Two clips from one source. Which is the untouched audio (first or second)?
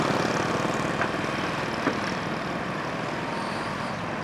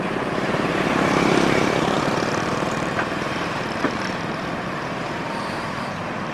first